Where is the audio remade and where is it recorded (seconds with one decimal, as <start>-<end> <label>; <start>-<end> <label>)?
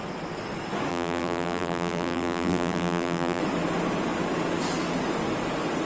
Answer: 0.0-0.9 recorded; 0.9-3.4 remade; 3.4-5.9 recorded